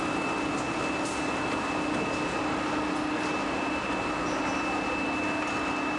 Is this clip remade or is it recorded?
recorded